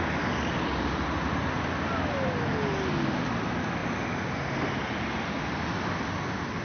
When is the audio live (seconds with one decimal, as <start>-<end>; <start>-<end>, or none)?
0.0-6.6